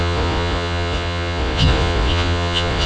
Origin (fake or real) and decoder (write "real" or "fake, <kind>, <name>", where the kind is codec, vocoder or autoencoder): fake, vocoder, Vocos